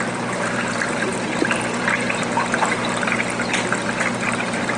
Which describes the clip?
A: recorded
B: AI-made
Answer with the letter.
B